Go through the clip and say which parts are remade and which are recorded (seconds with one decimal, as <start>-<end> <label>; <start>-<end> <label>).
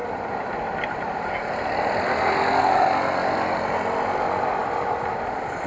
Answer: 0.0-1.2 remade; 1.2-4.6 recorded; 4.6-5.7 remade